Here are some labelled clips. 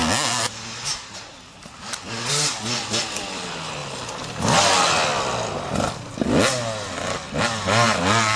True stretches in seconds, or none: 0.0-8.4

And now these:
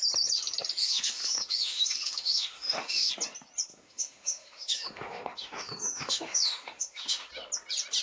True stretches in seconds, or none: 0.0-0.8; 3.1-3.7; 7.3-8.0

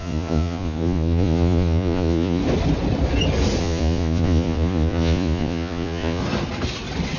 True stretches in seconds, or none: 2.4-3.6; 6.2-7.2

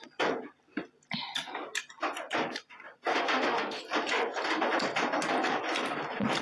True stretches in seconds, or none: 0.0-3.1; 3.8-6.4